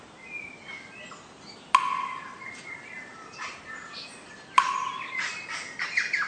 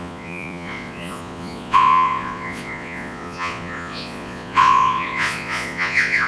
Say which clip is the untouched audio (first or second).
first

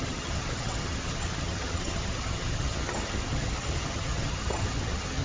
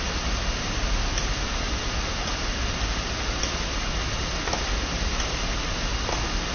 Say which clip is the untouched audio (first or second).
second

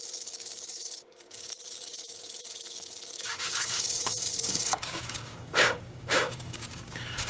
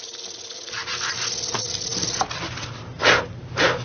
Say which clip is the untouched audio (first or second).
second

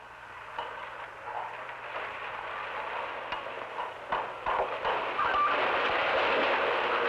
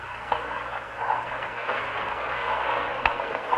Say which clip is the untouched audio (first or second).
first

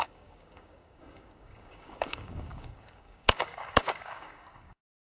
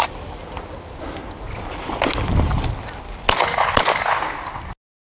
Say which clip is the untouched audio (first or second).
second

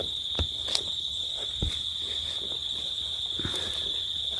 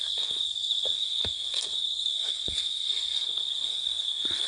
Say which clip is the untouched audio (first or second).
first